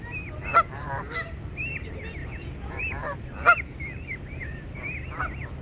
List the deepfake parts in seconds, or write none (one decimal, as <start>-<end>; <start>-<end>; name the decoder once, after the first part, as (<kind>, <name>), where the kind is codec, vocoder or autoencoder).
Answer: 2.2-2.8 (vocoder, Vocos)